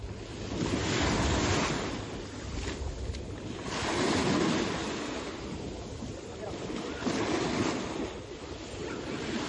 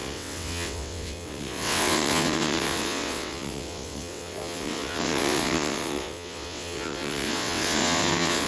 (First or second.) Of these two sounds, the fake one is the second